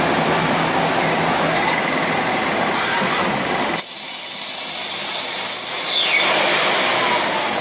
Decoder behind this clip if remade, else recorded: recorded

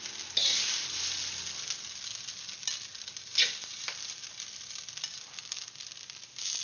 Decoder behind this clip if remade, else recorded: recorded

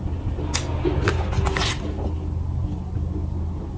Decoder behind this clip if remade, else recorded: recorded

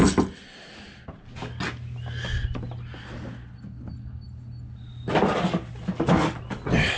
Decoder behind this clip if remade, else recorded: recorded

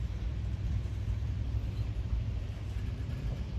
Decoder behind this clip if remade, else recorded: remade, vocoder, BigVGAN v2